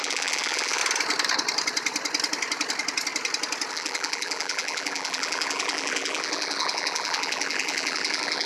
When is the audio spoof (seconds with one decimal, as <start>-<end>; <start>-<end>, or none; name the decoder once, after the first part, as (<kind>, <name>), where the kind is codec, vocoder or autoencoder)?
0.0-0.8 (vocoder, BigVGAN v2); 3.7-8.5